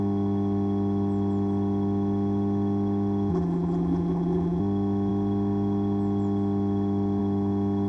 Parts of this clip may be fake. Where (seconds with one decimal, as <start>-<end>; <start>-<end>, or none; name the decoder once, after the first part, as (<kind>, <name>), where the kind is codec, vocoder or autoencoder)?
3.3-4.6 (vocoder, BigVGAN v2)